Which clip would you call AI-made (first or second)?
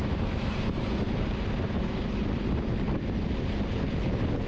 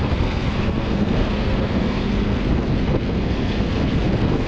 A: second